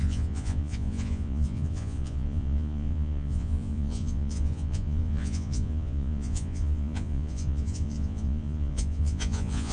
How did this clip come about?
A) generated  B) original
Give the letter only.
A